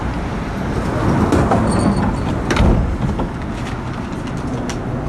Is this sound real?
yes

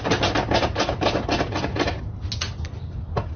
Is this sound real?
yes